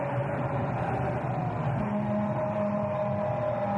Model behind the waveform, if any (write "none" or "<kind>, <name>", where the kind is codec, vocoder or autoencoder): none